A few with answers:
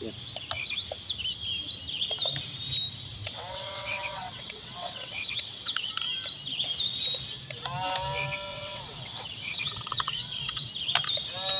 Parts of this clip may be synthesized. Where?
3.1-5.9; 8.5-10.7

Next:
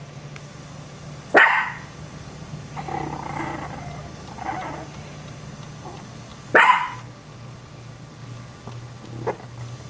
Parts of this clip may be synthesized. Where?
none

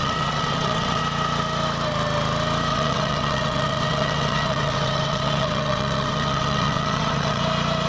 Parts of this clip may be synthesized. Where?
0.0-1.0; 2.7-7.4

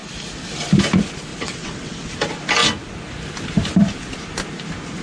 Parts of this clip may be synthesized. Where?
1.3-2.1